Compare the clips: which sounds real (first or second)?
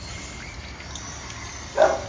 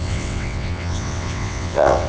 first